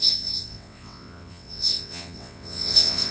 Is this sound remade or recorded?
remade